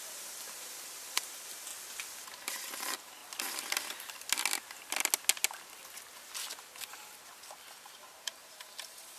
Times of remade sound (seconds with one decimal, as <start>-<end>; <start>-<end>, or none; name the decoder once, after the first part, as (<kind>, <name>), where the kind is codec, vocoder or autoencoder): 0.0-1.7 (vocoder, BigVGAN v2); 2.2-3.2; 7.8-9.2